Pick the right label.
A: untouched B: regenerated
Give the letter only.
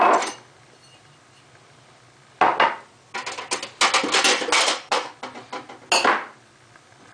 A